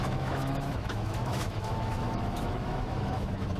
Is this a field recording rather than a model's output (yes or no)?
no